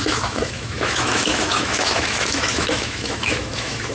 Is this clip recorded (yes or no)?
no